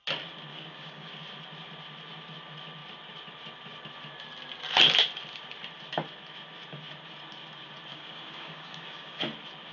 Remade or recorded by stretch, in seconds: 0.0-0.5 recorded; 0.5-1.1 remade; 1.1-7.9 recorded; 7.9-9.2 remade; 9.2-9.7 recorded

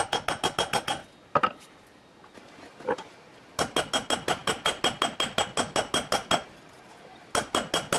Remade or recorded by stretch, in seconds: 0.0-8.0 recorded